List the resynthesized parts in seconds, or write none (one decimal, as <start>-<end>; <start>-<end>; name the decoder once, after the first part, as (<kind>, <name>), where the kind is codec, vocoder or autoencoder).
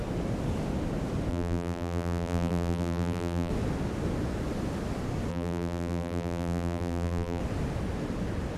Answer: 1.3-3.5 (vocoder, BigVGAN v2); 5.3-7.4